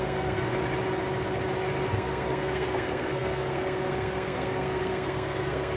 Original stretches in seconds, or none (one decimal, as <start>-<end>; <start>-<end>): 0.5-1.9